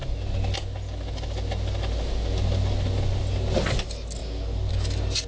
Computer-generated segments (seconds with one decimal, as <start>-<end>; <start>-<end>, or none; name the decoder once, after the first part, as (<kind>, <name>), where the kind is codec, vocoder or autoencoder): none

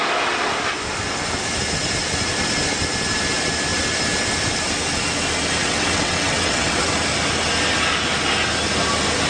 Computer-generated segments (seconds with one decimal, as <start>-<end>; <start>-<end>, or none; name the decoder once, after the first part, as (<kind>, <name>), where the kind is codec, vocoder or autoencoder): 5.6-6.9 (vocoder, WaveNeXt)

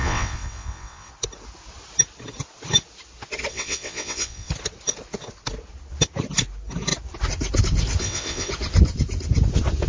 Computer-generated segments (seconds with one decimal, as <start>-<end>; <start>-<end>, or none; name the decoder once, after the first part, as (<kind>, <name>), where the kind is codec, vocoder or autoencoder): 0.0-1.1 (vocoder, WaveNeXt); 3.5-4.5; 8.0-8.5

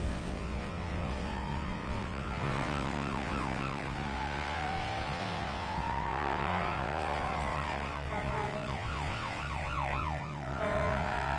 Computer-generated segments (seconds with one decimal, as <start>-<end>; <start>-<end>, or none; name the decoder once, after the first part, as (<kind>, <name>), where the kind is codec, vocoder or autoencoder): 0.0-11.4 (vocoder, WaveNeXt)

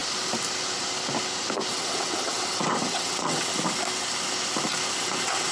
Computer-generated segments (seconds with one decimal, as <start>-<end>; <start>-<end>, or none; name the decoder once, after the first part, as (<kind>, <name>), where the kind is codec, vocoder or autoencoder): 1.7-3.5 (vocoder, WaveNeXt); 5.0-5.5

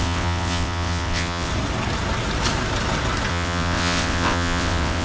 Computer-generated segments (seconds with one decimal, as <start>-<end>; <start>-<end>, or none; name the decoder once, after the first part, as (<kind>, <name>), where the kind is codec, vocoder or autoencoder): 0.0-1.5 (vocoder, WaveNeXt); 3.3-5.0

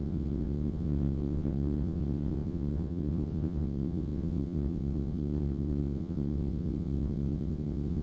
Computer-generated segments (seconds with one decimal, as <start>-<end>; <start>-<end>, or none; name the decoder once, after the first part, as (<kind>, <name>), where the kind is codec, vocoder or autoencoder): 0.0-8.0 (vocoder, WaveNeXt)